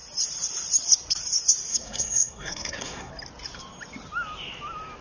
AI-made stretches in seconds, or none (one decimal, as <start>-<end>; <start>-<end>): 1.7-3.1